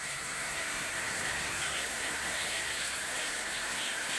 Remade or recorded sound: remade